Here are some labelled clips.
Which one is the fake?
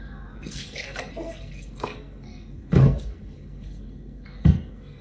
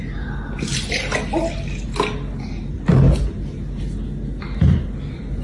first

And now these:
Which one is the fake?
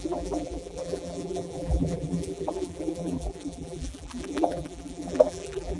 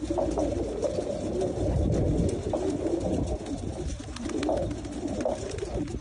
first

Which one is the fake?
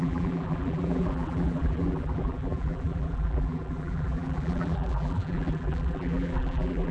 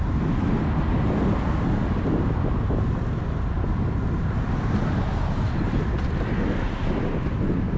first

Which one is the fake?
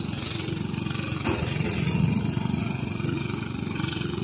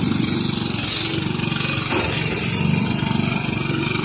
first